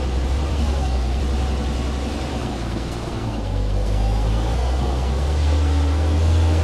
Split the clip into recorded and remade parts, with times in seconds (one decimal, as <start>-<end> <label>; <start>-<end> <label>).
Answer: 0.0-0.5 recorded; 0.5-1.2 remade; 1.2-2.3 recorded; 2.3-6.6 remade